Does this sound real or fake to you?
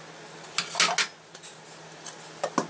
real